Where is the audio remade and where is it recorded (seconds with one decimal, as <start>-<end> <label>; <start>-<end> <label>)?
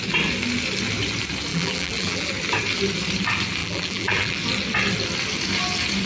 0.0-1.5 recorded; 1.5-2.3 remade; 2.3-3.6 recorded; 3.6-4.4 remade; 4.4-6.1 recorded